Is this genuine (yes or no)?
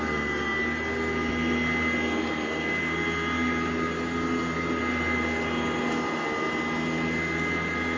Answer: yes